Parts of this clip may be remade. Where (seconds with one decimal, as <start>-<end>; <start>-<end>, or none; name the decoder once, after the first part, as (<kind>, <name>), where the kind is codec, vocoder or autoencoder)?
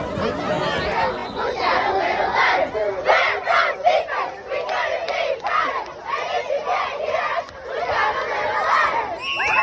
1.2-2.9 (vocoder, Vocos); 6.7-7.5